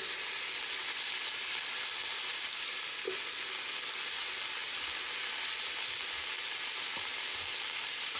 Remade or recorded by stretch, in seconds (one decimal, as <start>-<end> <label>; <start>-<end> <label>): 0.0-4.6 recorded; 4.6-6.5 remade; 6.5-8.2 recorded